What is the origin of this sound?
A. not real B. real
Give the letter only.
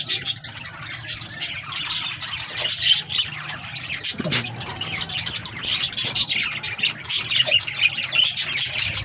B